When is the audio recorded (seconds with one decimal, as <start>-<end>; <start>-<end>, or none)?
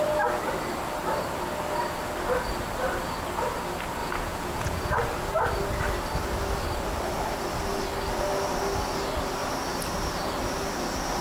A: 0.0-4.0; 4.9-11.2